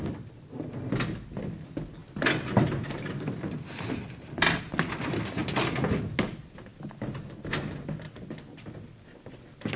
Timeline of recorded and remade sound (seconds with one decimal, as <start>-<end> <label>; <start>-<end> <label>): 0.0-9.8 recorded